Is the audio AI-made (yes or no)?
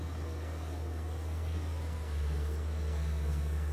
yes